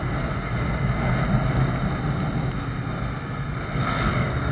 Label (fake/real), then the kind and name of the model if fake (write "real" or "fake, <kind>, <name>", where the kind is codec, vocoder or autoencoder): real